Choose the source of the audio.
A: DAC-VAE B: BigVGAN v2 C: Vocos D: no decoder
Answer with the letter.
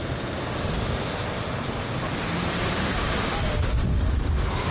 B